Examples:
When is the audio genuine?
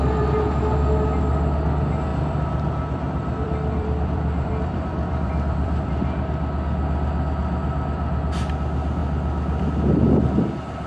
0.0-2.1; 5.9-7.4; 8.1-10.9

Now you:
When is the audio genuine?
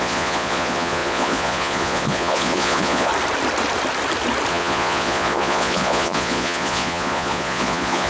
3.1-4.5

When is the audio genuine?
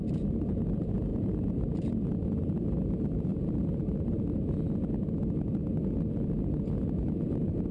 0.0-1.1; 1.6-3.3; 4.5-7.7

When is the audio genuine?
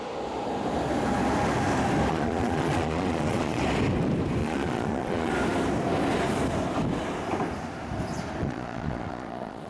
0.0-2.1; 3.6-4.4; 5.3-8.4